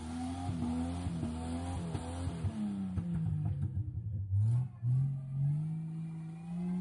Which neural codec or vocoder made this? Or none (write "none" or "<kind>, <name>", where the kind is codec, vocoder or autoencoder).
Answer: none